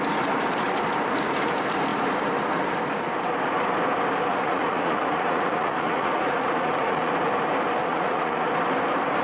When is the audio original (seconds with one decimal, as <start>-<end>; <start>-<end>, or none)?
0.0-4.3; 7.1-7.8; 8.5-9.2